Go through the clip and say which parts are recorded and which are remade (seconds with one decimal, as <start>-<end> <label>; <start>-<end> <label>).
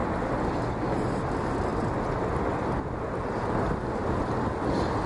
0.0-5.1 recorded